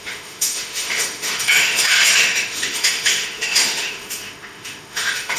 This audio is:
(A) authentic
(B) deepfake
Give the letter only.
B